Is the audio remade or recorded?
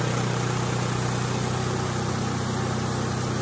recorded